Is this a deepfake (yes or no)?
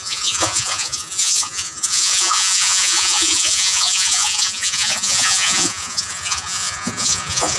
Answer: yes